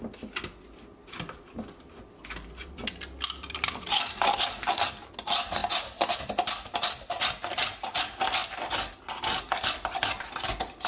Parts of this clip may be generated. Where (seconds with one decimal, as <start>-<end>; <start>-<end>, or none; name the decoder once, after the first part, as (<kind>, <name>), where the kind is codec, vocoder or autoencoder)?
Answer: none